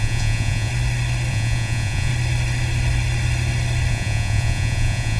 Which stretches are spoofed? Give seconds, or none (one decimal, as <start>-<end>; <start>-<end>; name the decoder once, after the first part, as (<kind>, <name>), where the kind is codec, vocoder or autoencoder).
0.0-0.7 (vocoder, Vocos); 1.3-2.1; 3.9-5.2